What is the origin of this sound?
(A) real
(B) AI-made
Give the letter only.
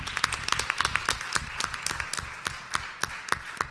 A